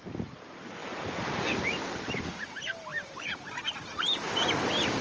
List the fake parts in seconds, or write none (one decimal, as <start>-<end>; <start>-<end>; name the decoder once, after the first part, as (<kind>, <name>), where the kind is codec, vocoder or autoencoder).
0.8-1.8 (vocoder, BigVGAN v2); 2.9-4.2